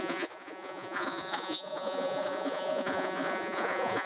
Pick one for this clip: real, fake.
fake